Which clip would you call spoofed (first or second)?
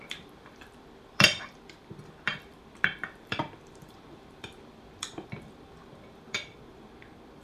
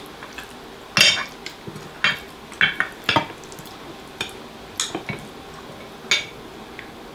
first